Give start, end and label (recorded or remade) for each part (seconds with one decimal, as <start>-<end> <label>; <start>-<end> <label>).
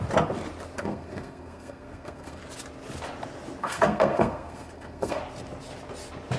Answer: 0.0-0.8 recorded; 0.8-2.4 remade; 2.4-3.6 recorded; 3.6-5.2 remade; 5.2-6.4 recorded